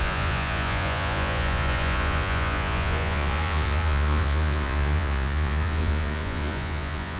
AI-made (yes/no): yes